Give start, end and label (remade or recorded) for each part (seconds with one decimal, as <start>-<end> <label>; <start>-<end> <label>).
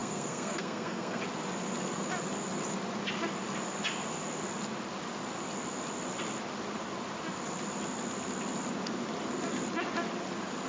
0.0-1.2 remade; 1.2-10.7 recorded